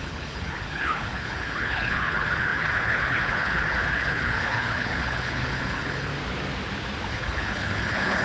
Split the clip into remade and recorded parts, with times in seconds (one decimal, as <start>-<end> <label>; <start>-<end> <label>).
0.0-6.1 remade; 6.1-7.1 recorded; 7.1-8.2 remade